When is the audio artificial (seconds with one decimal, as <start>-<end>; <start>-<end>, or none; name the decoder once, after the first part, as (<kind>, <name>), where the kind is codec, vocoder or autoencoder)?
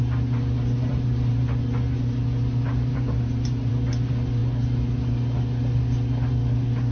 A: 0.8-1.6 (vocoder, BigVGAN v2); 2.7-3.7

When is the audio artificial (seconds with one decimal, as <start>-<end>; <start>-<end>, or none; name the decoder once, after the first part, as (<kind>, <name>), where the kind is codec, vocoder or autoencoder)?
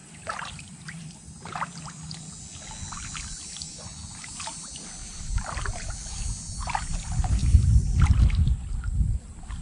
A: 0.0-2.0 (vocoder, BigVGAN v2); 5.0-5.9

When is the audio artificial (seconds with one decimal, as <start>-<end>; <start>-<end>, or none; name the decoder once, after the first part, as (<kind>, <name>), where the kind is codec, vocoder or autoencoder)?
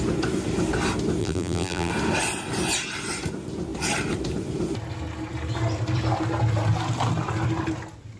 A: 1.2-1.9 (vocoder, BigVGAN v2)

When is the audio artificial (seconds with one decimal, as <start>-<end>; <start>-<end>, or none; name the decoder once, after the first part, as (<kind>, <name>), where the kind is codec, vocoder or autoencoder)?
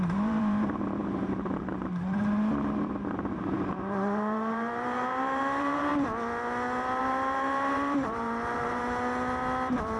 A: 0.0-5.9 (vocoder, BigVGAN v2); 7.0-8.8